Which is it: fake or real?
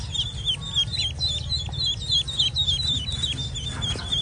real